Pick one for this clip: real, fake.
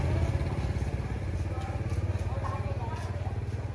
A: real